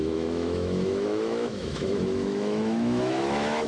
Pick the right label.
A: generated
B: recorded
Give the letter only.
A